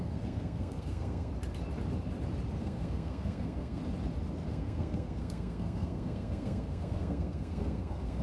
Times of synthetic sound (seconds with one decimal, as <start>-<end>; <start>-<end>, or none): 0.0-1.3; 2.6-3.8; 4.5-8.2